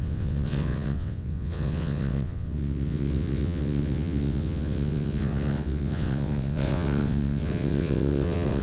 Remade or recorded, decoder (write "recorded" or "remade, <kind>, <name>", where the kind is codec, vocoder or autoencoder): remade, vocoder, WaveNeXt